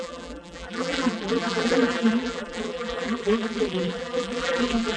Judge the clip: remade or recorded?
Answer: remade